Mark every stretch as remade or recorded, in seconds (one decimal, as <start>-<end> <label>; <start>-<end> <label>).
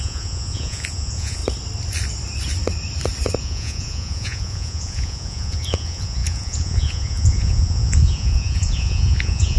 0.0-1.4 remade; 1.4-3.4 recorded; 3.4-9.6 remade